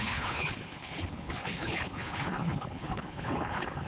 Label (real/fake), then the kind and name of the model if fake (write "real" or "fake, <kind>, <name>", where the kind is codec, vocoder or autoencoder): fake, codec, HILCodec